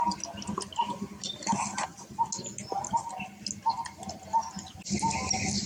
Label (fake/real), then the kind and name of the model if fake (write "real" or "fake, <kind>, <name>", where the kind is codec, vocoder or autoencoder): real